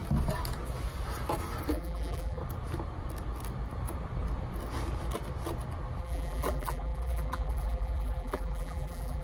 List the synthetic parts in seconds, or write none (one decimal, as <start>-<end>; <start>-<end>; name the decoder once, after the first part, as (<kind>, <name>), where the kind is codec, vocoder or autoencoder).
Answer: 1.7-2.4 (vocoder, BigVGAN v2); 6.0-9.2